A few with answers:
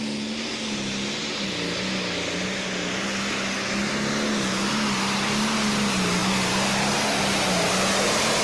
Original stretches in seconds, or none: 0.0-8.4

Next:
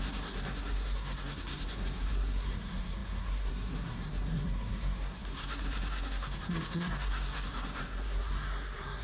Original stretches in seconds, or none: none

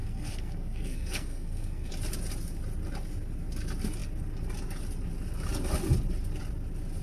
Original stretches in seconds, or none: 1.9-7.0

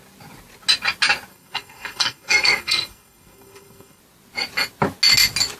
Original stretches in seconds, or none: 0.0-1.3; 4.0-5.6

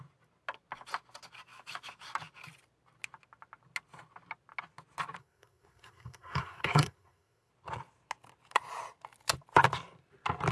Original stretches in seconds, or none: 0.0-5.2; 7.5-10.5

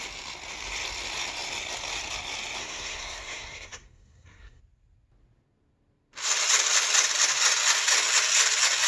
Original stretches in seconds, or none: 0.0-2.6; 4.6-8.9